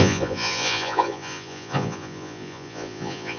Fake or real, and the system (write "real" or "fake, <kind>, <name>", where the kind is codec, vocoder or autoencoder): fake, vocoder, Vocos